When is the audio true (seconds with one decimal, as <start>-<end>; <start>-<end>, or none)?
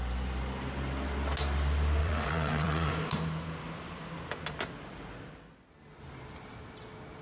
0.0-2.0; 2.9-7.2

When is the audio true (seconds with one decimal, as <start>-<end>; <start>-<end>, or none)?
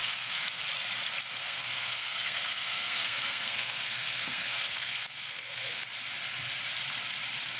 0.6-1.4; 5.8-7.6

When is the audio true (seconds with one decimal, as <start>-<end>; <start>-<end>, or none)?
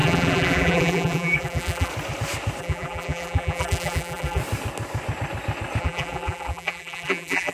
1.9-2.6; 4.4-5.8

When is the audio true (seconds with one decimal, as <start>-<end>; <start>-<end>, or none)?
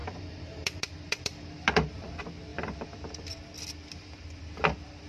1.9-2.5; 3.3-5.1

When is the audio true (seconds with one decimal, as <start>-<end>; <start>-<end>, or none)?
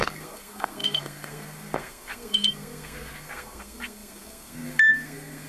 none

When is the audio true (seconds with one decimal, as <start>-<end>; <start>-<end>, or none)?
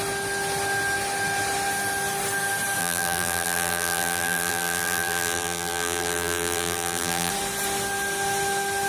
0.0-2.8; 7.3-8.9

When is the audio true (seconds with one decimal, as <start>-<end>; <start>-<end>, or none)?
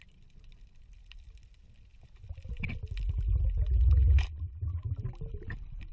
0.0-1.9; 2.5-5.9